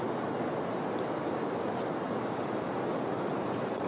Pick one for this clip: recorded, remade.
recorded